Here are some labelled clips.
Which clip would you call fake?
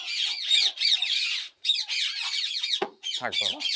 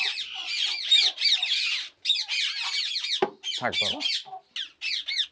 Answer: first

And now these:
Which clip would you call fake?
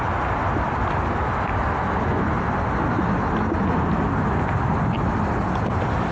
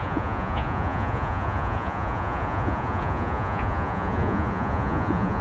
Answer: second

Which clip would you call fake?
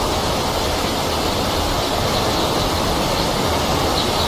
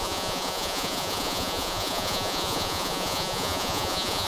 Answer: second